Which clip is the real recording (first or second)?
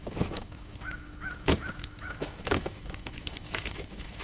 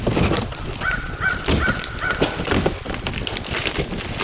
second